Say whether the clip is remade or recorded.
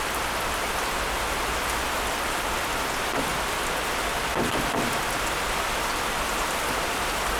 recorded